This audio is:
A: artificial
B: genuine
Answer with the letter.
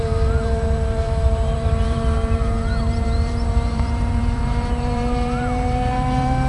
A